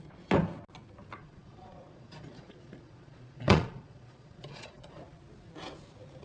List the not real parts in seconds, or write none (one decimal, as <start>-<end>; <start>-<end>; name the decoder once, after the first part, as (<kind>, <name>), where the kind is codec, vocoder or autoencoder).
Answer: 1.2-4.9 (vocoder, Vocos)